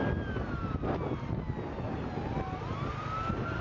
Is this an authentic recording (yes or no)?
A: yes